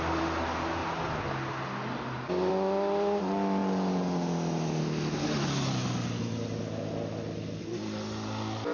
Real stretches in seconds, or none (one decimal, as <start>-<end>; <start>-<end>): 0.0-8.7